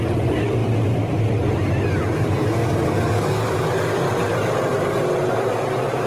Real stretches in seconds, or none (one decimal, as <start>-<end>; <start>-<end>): 0.0-6.1